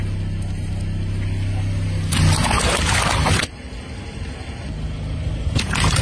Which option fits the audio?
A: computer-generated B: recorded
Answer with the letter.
B